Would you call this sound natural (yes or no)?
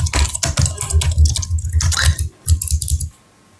yes